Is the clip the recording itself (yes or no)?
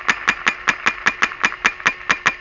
yes